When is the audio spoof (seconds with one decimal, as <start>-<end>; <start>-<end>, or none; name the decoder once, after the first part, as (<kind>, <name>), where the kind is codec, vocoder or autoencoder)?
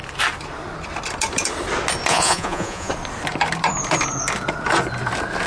2.1-2.9 (vocoder, Vocos)